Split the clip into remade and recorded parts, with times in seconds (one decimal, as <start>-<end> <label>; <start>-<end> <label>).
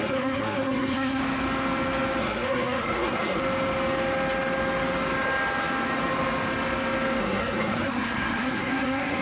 0.0-1.2 remade; 1.2-2.2 recorded; 2.2-3.4 remade; 3.4-7.2 recorded; 7.2-9.2 remade